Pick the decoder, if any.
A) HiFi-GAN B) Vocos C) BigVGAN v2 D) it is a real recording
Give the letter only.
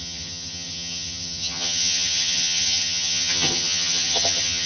A